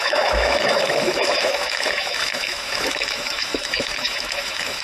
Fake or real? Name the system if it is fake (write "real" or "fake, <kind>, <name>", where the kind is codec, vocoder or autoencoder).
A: fake, autoencoder, DAC-VAE